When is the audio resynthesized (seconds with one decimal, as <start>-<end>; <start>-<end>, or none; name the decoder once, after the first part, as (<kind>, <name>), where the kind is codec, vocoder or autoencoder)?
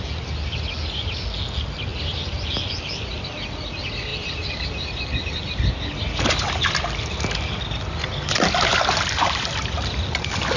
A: 1.9-3.3 (vocoder, BigVGAN v2); 4.1-5.4; 8.7-9.6